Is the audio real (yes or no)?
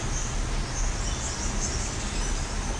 yes